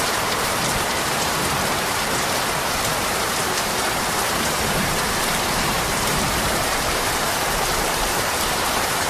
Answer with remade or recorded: remade